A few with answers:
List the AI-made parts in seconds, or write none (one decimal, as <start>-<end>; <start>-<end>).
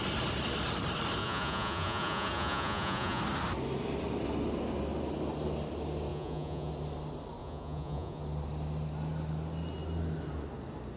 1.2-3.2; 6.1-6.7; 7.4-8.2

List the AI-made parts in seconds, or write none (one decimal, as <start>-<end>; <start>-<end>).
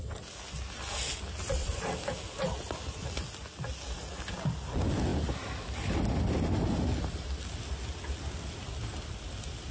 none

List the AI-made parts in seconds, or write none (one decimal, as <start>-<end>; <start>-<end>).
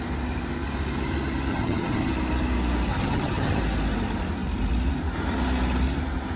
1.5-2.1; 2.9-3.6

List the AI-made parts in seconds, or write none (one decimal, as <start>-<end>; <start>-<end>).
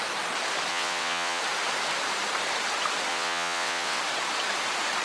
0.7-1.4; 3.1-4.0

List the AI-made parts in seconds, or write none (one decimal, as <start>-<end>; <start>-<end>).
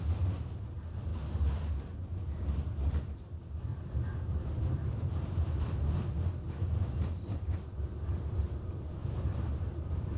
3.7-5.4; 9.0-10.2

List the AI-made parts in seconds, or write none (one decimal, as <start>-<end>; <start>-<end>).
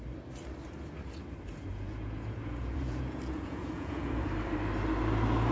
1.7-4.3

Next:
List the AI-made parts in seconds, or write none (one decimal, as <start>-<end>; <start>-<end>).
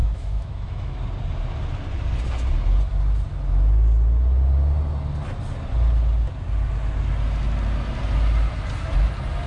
0.0-1.0